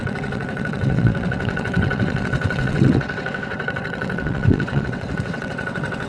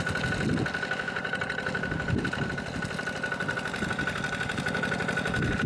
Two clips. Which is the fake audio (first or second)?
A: first